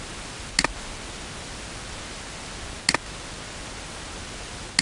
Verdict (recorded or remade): recorded